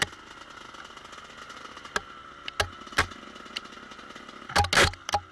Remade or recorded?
recorded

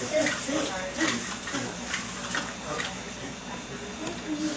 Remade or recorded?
remade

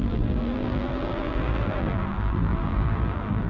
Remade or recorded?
remade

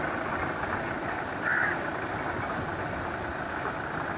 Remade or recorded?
recorded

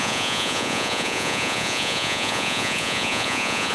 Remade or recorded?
remade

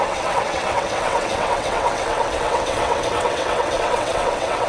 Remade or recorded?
remade